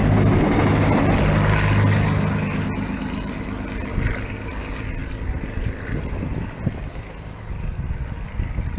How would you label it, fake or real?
real